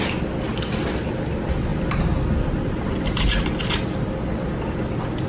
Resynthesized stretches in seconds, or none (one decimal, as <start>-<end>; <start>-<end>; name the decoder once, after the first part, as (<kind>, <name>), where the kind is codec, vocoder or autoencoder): none